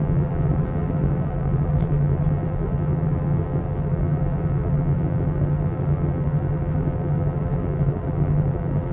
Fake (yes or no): yes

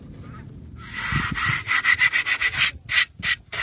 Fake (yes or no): no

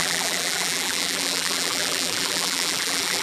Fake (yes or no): yes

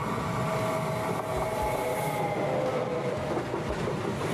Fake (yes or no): no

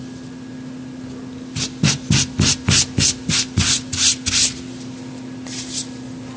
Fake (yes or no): no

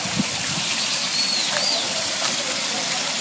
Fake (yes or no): no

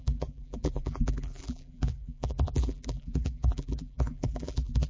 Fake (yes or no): yes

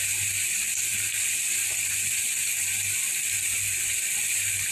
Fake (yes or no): yes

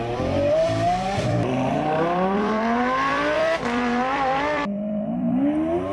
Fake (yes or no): yes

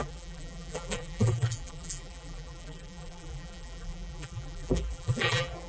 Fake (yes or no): yes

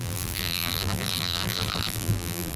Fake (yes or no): yes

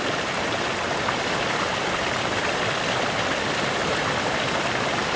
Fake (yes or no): yes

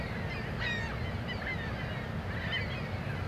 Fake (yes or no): no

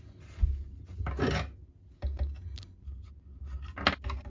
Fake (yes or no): no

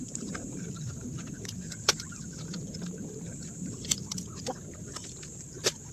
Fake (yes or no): yes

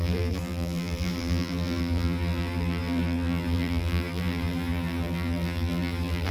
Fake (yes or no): yes